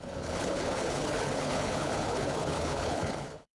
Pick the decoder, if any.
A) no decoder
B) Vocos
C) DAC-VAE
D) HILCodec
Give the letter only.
D